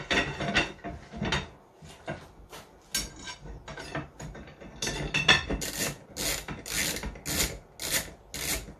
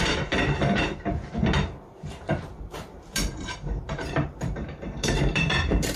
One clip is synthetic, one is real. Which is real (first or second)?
first